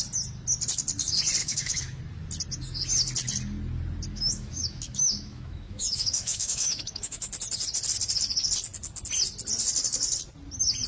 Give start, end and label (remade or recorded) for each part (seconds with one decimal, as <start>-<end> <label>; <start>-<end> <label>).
0.0-1.4 recorded; 1.4-2.0 remade; 2.0-4.1 recorded; 4.1-7.3 remade; 7.3-10.9 recorded